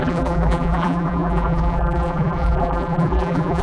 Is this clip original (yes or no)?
no